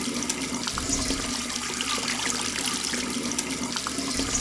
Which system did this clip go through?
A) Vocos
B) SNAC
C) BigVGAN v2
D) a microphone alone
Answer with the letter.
D